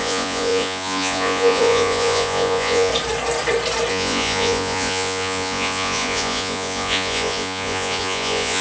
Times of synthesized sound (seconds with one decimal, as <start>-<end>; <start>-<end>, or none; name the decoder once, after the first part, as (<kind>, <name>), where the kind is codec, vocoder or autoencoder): 0.0-2.9 (vocoder, Vocos); 3.9-8.6